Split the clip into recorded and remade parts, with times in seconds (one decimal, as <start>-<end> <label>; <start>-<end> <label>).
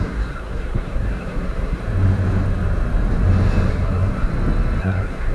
0.0-1.8 remade; 1.8-3.7 recorded; 3.7-4.3 remade; 4.3-4.8 recorded; 4.8-5.3 remade